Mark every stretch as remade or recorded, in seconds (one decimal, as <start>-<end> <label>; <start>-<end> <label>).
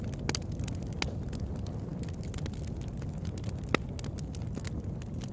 0.0-5.3 recorded